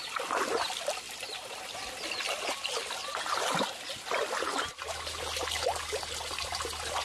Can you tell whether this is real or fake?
real